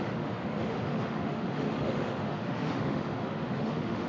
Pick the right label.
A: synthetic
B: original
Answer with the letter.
A